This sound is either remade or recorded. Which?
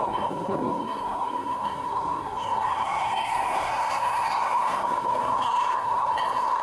remade